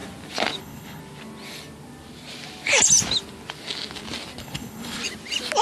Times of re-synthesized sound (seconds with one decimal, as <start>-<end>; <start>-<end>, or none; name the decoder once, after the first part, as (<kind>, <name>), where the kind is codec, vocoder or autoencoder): 0.6-1.0 (codec, HILCodec); 4.4-5.0